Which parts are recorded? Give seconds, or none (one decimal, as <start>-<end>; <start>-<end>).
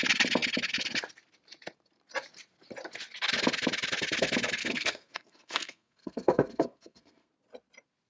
0.0-4.6; 7.3-8.1